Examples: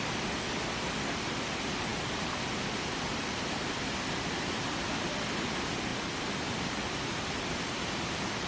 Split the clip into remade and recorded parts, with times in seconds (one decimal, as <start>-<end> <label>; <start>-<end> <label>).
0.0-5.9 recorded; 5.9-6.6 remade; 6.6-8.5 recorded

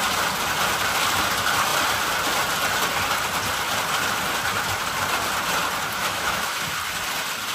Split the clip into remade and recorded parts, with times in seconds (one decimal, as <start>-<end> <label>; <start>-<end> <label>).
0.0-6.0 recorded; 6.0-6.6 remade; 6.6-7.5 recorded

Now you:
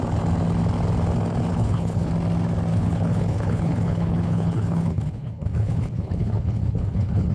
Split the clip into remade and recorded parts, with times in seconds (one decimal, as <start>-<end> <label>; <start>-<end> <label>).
0.0-1.5 recorded; 1.5-2.1 remade; 2.1-2.7 recorded; 2.7-7.3 remade